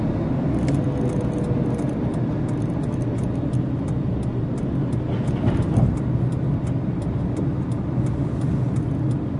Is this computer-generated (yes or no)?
no